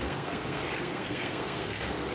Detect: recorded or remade remade